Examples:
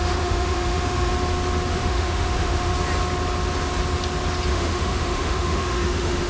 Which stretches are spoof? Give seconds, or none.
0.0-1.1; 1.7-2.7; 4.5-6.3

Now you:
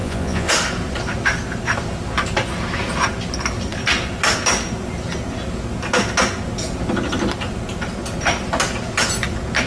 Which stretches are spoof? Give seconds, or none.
0.0-0.5

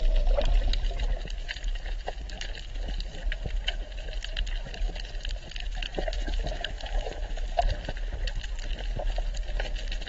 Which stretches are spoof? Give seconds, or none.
5.6-7.6

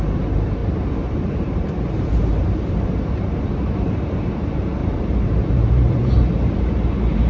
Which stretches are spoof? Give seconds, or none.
0.0-7.3

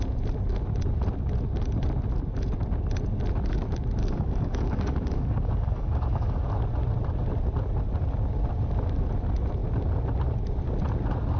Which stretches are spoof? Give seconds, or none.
4.0-6.5

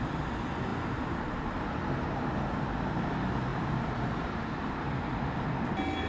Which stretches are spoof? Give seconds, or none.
0.7-2.7; 3.5-4.7